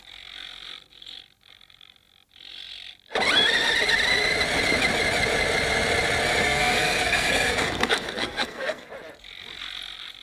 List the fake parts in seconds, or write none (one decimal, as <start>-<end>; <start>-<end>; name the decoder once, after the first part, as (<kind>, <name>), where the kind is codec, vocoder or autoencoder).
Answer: 6.4-8.9 (codec, SNAC)